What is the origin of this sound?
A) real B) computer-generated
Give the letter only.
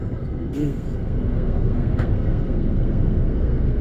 B